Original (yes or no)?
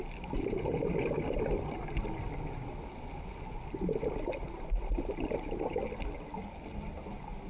yes